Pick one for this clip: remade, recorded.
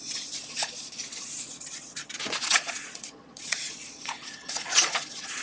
remade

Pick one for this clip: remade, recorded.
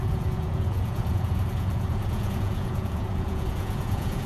remade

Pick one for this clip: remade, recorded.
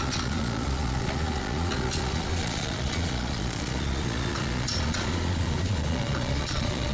remade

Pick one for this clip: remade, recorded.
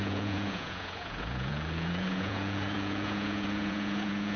remade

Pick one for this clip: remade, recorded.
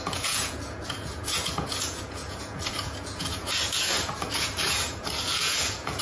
remade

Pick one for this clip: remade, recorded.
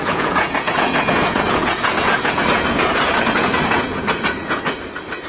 remade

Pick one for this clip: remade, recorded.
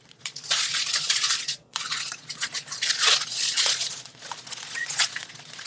remade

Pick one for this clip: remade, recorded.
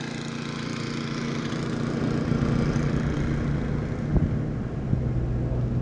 recorded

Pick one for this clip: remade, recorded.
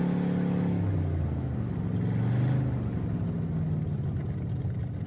recorded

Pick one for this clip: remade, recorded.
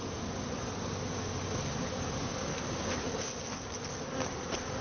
recorded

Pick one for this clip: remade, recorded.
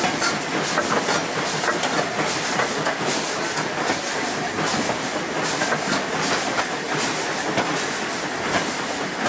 recorded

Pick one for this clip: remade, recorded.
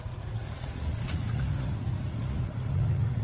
remade